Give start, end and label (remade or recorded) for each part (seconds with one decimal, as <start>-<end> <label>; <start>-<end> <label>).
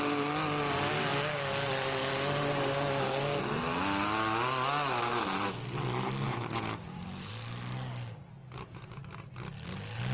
0.0-6.3 recorded; 6.3-7.3 remade; 7.3-8.4 recorded; 8.4-9.0 remade; 9.0-10.1 recorded